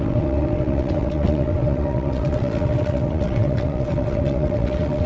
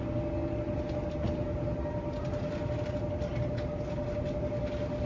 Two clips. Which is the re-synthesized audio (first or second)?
first